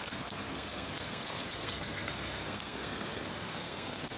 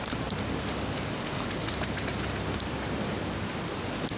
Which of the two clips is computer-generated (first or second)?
first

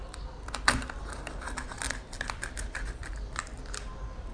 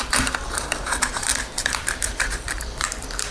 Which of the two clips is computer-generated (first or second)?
second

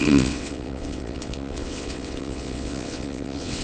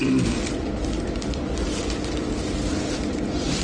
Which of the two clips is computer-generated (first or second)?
first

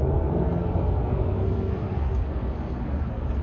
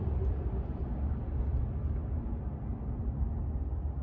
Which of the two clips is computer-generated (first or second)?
first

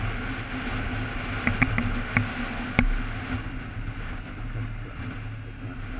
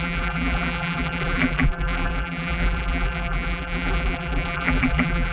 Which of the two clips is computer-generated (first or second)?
second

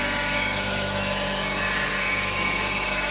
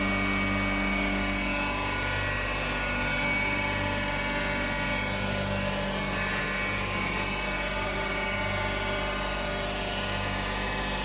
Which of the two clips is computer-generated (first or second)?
first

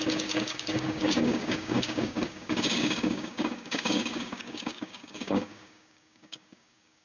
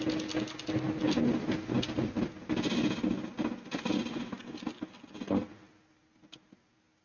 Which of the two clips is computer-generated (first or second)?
first